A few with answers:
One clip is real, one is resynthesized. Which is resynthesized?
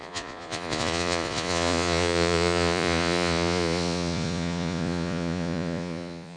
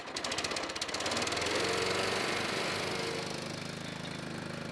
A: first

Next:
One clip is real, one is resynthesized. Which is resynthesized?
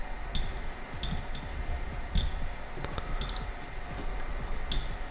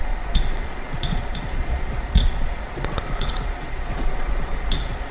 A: second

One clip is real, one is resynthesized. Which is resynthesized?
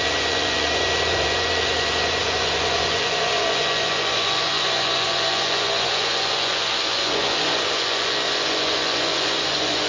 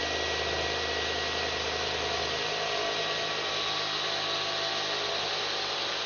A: first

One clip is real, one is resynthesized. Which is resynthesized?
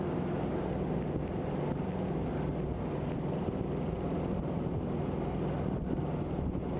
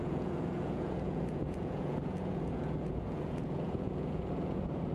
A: second